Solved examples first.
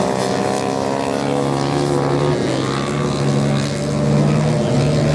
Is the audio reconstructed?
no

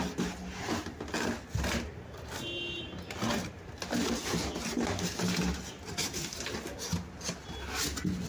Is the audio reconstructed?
no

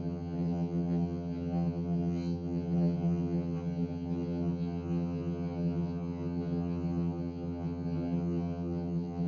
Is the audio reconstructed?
yes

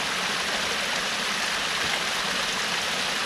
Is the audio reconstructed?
no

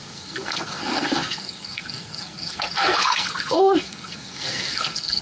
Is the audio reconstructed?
yes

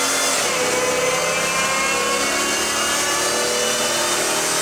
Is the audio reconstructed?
no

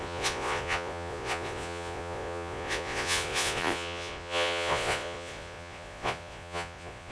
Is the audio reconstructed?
yes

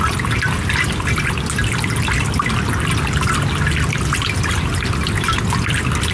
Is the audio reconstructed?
no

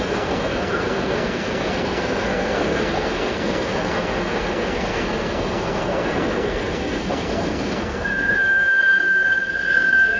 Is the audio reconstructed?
yes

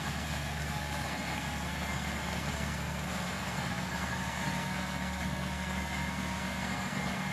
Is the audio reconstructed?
yes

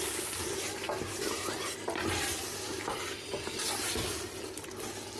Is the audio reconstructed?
no